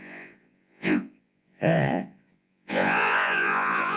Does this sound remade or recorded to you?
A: remade